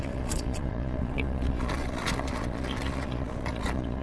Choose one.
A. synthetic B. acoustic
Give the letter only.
A